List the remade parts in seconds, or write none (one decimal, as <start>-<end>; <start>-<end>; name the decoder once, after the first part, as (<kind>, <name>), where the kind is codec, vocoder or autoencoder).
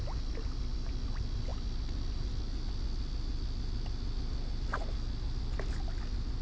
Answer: none